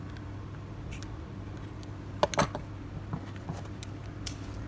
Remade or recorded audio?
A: recorded